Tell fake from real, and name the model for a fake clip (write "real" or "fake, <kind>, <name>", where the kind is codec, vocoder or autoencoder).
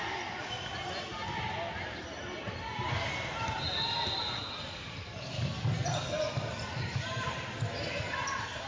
real